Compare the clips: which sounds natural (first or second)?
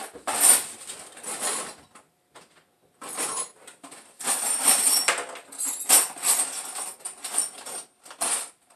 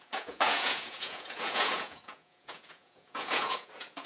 first